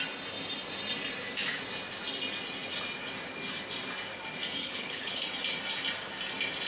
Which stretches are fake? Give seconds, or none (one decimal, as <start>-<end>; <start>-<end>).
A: 4.6-5.2